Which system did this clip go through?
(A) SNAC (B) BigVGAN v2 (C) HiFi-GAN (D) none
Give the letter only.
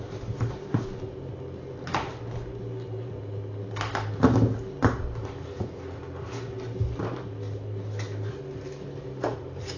D